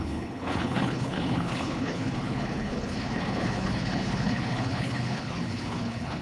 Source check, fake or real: fake